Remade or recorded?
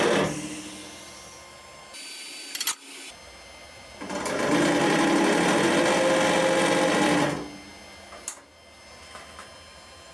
recorded